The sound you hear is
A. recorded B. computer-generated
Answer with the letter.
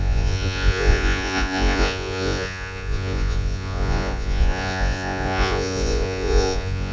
B